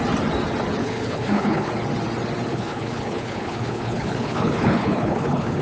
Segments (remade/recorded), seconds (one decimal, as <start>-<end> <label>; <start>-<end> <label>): 0.0-0.8 recorded; 0.8-1.7 remade; 1.7-2.5 recorded; 2.5-5.6 remade